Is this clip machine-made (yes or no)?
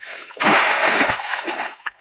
yes